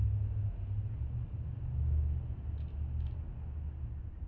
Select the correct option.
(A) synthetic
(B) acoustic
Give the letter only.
B